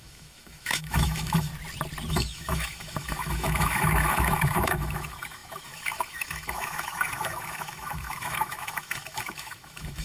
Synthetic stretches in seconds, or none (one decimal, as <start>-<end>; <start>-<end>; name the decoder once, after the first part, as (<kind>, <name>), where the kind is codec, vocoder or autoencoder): 0.0-1.5 (autoencoder, DAC-VAE); 2.1-10.0